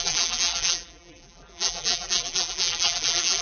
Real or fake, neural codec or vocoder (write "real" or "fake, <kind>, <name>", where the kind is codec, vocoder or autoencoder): fake, vocoder, BigVGAN v2